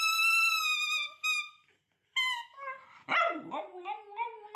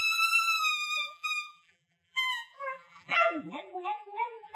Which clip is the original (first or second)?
first